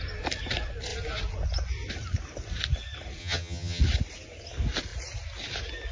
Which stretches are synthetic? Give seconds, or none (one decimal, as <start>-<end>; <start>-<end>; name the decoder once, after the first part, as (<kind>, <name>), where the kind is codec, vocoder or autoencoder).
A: 3.2-3.8 (vocoder, HiFi-GAN)